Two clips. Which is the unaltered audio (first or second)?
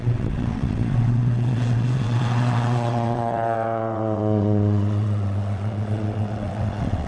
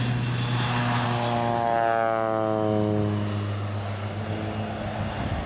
second